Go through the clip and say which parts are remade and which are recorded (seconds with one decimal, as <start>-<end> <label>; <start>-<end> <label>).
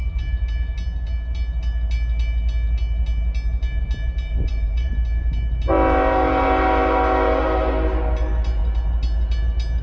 0.0-4.3 recorded; 4.3-4.9 remade; 4.9-9.8 recorded